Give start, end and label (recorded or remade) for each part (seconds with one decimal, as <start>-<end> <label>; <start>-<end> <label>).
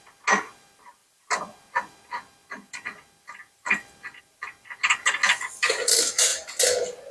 0.0-7.1 recorded